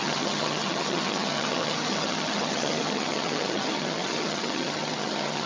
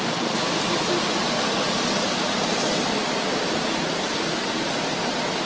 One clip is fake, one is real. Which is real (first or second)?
second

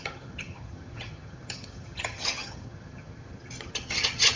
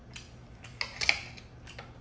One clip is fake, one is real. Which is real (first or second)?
second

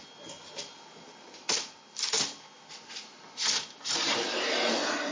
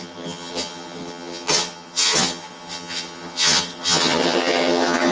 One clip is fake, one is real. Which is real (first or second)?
first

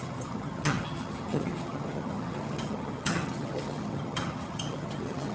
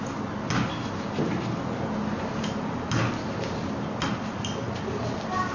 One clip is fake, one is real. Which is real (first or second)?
second